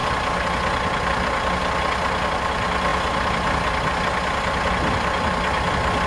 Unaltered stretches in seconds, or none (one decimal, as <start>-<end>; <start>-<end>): 0.0-6.1